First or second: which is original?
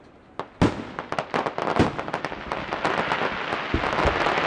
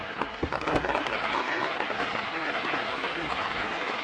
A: first